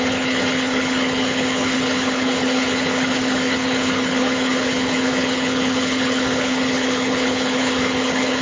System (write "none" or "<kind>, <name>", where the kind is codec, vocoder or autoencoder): codec, HILCodec